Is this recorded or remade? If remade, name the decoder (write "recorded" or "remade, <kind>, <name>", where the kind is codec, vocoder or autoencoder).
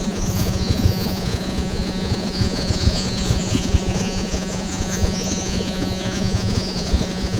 remade, vocoder, Vocos